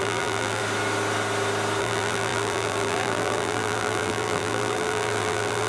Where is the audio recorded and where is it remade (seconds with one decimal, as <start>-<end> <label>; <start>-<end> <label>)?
0.0-0.6 remade; 0.6-1.8 recorded; 1.8-5.7 remade